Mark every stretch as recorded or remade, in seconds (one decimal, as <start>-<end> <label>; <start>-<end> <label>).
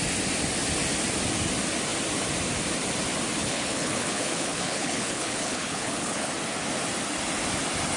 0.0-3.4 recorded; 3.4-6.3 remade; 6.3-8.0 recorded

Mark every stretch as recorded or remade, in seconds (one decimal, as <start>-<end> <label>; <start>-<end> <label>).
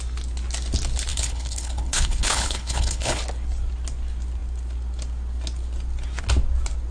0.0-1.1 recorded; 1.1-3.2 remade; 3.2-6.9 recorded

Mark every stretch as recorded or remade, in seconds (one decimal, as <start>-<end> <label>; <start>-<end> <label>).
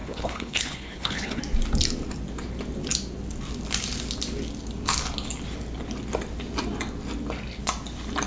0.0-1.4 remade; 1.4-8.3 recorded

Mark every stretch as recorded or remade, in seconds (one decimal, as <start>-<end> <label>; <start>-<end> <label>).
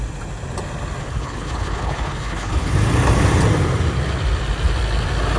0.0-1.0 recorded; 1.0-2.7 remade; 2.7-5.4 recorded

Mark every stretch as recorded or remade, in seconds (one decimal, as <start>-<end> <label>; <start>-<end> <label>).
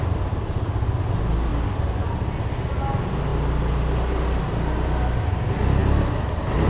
0.0-6.7 recorded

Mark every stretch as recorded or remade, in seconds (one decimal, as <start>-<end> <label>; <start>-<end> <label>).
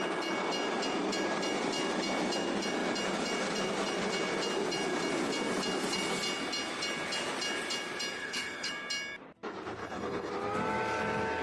0.0-8.2 recorded; 8.2-8.7 remade; 8.7-9.8 recorded; 9.8-10.3 remade; 10.3-11.4 recorded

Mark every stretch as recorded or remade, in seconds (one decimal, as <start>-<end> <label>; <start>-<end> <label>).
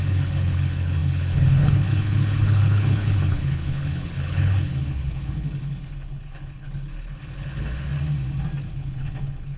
0.0-7.9 remade; 7.9-8.7 recorded; 8.7-9.6 remade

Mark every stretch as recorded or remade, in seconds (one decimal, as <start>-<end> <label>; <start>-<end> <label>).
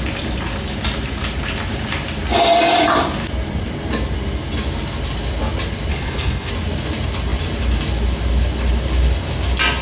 0.0-5.9 recorded; 5.9-6.5 remade; 6.5-9.8 recorded